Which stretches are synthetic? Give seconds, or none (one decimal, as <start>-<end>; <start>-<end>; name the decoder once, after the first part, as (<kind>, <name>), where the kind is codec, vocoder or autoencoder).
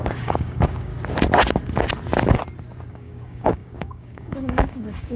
0.0-0.9 (codec, DAC); 2.9-5.2